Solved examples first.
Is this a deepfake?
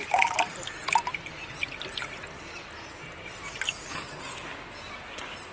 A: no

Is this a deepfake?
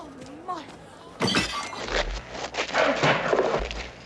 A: no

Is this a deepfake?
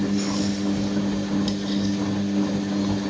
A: no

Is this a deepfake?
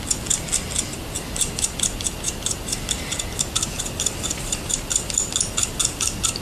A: no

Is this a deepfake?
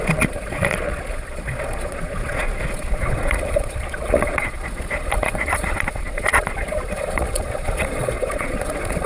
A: yes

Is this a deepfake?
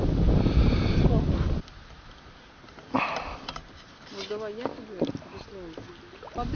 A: no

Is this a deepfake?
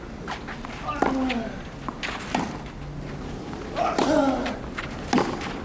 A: no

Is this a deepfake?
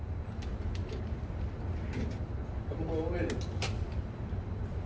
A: no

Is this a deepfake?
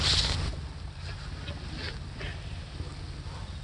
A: no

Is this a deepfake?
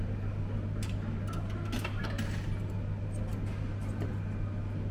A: no